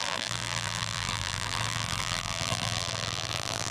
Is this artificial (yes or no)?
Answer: yes